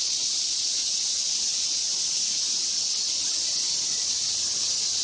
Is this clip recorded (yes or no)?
yes